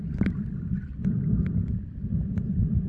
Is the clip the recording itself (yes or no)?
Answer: yes